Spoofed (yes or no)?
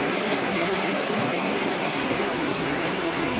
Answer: yes